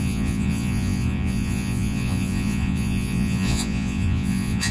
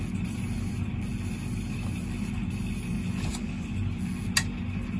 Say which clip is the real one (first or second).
second